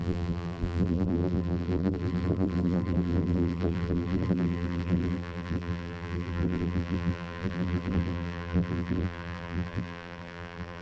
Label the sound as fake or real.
fake